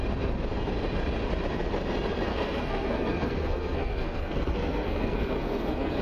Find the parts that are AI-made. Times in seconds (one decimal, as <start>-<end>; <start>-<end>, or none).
2.3-6.0